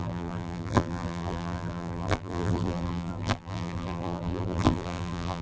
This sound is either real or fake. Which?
fake